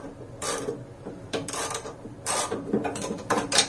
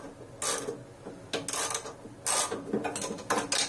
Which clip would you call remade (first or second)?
first